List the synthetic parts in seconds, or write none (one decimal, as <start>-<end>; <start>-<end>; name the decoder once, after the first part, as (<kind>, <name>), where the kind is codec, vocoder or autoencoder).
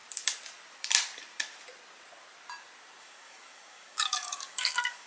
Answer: 3.0-5.1 (codec, DAC)